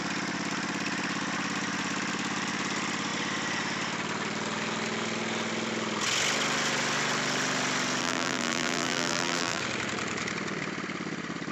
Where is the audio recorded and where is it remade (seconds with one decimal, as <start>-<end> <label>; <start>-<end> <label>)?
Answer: 0.0-8.0 recorded; 8.0-9.6 remade; 9.6-11.5 recorded